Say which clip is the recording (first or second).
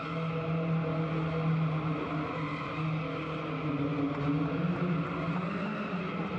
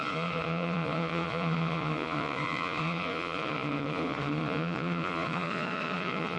first